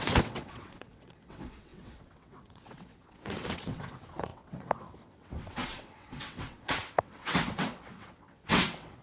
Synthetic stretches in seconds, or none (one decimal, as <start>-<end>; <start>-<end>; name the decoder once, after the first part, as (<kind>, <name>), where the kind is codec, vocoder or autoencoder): 0.0-9.0 (vocoder, WaveNeXt)